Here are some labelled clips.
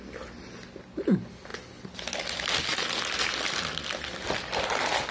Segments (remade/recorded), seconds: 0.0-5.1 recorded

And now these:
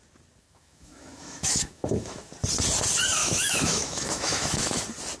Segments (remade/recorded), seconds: 0.0-0.4 recorded; 0.4-2.3 remade; 2.3-3.2 recorded; 3.2-4.8 remade; 4.8-5.2 recorded

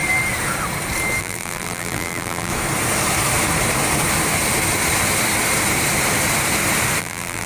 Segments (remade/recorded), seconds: 0.0-1.2 recorded; 1.2-2.5 remade; 2.5-7.0 recorded; 7.0-7.5 remade

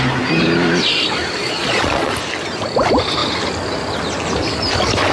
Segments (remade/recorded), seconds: 0.0-1.4 recorded; 1.4-2.1 remade; 2.1-5.1 recorded